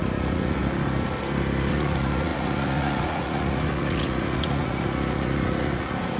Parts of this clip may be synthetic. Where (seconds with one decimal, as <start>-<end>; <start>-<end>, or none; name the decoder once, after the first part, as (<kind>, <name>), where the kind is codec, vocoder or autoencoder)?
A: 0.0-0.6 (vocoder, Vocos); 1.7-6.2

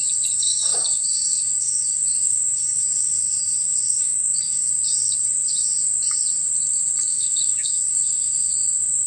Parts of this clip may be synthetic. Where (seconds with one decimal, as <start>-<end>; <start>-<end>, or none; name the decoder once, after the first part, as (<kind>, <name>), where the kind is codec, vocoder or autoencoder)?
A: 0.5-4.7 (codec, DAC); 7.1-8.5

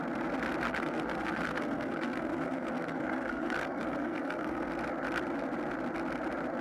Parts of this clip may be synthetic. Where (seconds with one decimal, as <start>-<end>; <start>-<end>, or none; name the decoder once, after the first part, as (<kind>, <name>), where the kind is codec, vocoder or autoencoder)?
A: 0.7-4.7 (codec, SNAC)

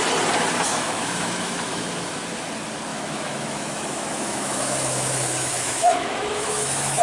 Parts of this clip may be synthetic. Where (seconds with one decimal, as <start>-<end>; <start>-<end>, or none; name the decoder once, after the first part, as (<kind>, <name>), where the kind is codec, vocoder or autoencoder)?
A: 0.7-1.8 (autoencoder, DAC-VAE); 2.9-7.0